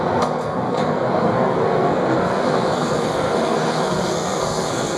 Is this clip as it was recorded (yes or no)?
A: no